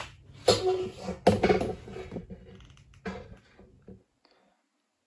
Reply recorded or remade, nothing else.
recorded